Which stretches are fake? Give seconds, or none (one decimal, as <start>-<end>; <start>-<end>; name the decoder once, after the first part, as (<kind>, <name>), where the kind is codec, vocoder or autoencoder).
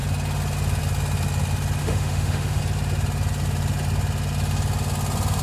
1.8-2.6 (autoencoder, DAC-VAE)